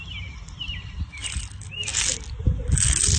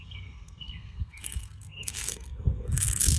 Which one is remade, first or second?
second